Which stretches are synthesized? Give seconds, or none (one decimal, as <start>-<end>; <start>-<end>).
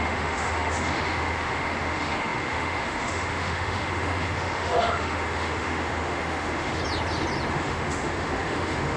0.0-6.8; 7.5-9.0